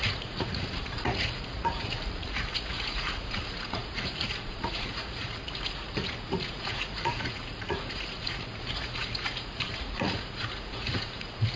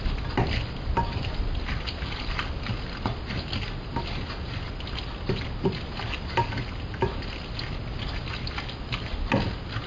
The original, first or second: second